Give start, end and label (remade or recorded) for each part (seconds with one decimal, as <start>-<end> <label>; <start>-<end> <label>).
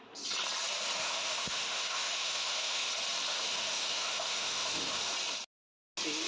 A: 0.0-1.0 recorded; 1.0-2.9 remade; 2.9-3.3 recorded; 3.3-5.1 remade; 5.1-6.3 recorded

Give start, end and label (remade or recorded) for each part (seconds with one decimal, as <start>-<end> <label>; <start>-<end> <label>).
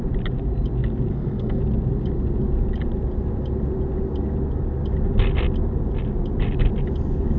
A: 0.0-1.1 recorded; 1.1-1.6 remade; 1.6-7.4 recorded